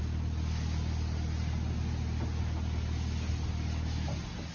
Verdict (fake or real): real